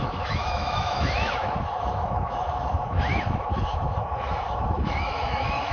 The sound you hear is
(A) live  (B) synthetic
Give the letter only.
B